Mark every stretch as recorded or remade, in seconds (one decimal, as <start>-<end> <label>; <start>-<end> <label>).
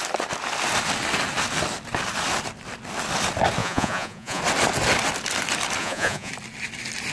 0.0-3.6 recorded; 3.6-4.4 remade; 4.4-5.8 recorded; 5.8-6.3 remade; 6.3-7.1 recorded